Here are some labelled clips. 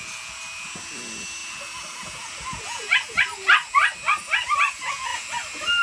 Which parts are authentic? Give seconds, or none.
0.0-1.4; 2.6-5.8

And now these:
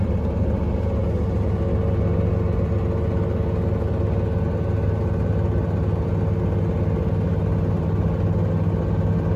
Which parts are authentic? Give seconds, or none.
0.0-9.4

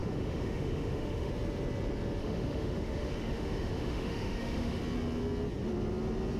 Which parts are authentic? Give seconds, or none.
1.3-2.2; 4.8-6.4

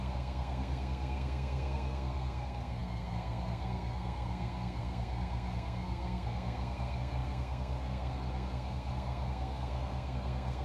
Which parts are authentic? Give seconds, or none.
none

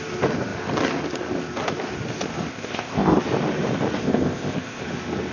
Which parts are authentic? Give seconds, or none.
0.0-2.5; 3.2-4.0; 4.8-5.3